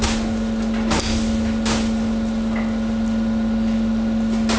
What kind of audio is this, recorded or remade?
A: recorded